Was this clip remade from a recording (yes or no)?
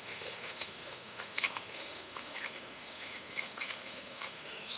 yes